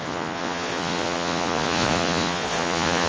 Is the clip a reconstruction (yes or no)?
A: yes